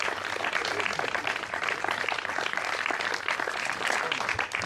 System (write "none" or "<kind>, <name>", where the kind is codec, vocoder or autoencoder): vocoder, BigVGAN v2